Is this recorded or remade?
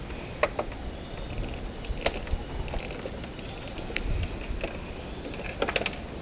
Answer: recorded